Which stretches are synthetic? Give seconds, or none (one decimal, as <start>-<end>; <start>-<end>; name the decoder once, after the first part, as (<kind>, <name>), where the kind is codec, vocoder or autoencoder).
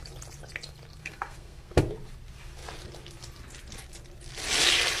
1.0-1.8 (codec, SNAC)